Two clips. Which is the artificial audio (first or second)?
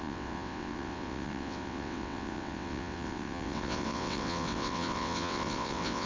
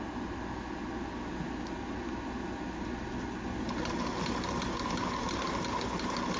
first